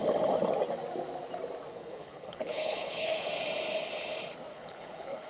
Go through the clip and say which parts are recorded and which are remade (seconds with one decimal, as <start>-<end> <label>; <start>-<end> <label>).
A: 0.0-1.7 recorded; 1.7-3.3 remade; 3.3-4.5 recorded; 4.5-5.3 remade